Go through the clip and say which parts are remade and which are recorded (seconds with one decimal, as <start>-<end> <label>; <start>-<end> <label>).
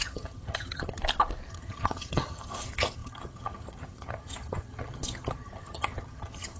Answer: 0.0-1.0 remade; 1.0-1.5 recorded; 1.5-6.6 remade